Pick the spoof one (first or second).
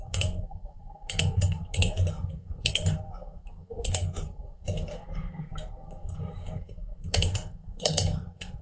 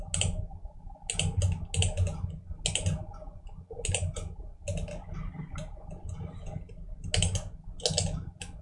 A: first